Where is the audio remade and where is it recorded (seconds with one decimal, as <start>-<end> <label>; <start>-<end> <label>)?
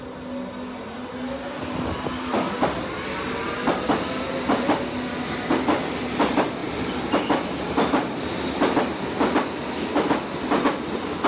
0.0-11.3 recorded